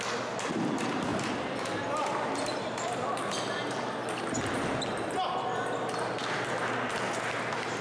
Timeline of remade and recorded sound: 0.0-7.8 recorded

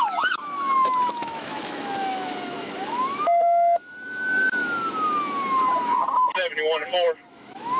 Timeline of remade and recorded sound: 0.0-4.6 remade; 4.6-7.3 recorded; 7.3-7.8 remade

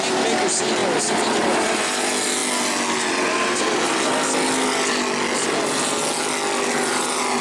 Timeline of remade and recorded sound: 0.0-0.8 recorded; 0.8-2.0 remade; 2.0-7.4 recorded

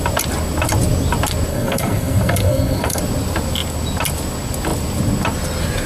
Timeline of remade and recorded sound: 0.0-1.5 recorded; 1.5-3.0 remade; 3.0-5.9 recorded

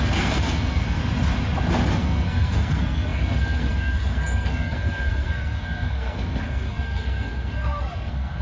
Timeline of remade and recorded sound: 0.0-1.0 remade; 1.0-1.9 recorded; 1.9-8.4 remade